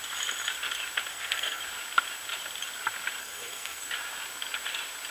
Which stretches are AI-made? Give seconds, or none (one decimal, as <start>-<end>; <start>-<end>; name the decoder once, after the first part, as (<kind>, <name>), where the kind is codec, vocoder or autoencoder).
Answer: 1.1-1.6 (codec, SNAC); 3.2-3.9